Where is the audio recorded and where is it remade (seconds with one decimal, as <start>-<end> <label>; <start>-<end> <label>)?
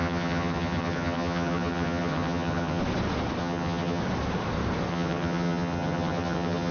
0.0-2.8 remade; 2.8-3.4 recorded; 3.4-4.0 remade; 4.0-4.9 recorded; 4.9-6.7 remade